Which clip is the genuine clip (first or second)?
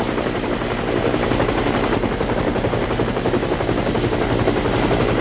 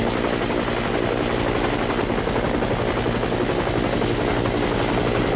second